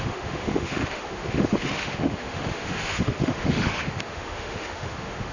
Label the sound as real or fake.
fake